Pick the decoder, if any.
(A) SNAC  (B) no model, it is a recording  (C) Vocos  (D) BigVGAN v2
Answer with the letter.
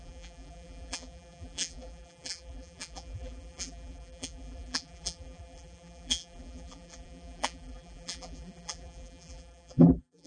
D